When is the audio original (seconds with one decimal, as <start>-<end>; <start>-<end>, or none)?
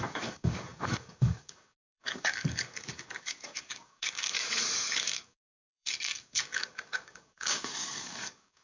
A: none